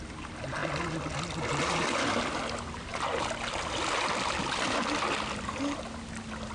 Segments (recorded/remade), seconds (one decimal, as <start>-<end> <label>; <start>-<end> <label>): 0.0-6.5 recorded